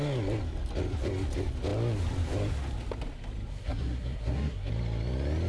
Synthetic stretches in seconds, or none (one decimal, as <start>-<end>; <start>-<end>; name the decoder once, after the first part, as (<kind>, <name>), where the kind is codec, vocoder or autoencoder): 3.5-4.7 (codec, SNAC)